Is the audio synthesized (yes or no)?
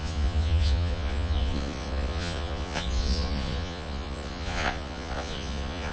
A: yes